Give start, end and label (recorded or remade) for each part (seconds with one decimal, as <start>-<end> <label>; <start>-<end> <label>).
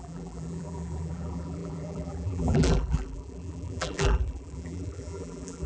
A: 0.0-5.7 remade